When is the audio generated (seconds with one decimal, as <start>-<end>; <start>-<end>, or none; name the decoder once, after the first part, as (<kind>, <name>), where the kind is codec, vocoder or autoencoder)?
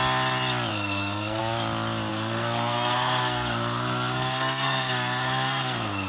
0.7-1.4 (codec, SNAC); 2.1-6.1